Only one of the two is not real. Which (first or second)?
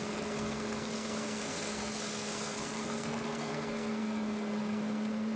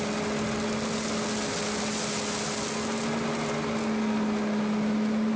first